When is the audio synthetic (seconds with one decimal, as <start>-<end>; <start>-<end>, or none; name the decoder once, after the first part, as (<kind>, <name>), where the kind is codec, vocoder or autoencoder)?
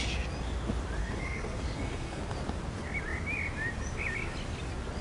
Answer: 1.0-2.2 (codec, SNAC)